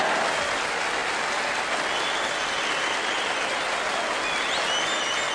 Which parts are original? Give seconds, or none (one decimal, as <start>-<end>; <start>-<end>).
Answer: 0.0-5.3